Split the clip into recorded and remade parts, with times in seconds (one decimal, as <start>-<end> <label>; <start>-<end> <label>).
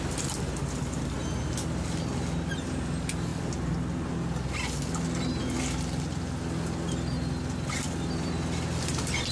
0.0-9.3 recorded